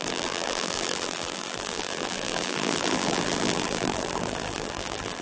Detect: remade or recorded remade